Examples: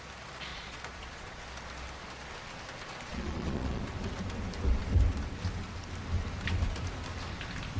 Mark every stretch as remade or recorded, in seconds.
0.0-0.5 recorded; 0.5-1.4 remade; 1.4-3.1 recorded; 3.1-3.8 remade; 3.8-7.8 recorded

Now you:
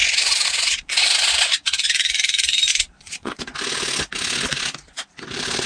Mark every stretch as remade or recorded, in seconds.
0.0-1.3 remade; 1.3-2.7 recorded; 2.7-3.4 remade; 3.4-5.7 recorded

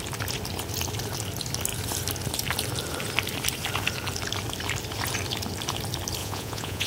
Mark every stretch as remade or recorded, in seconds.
0.0-6.2 recorded; 6.2-6.9 remade